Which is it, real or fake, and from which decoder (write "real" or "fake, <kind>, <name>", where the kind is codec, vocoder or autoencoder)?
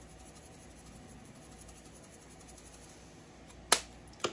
real